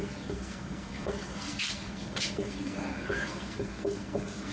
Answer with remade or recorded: remade